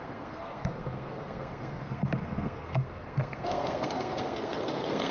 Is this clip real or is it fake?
fake